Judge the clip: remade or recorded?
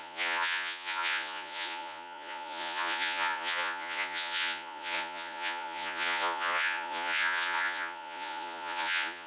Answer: remade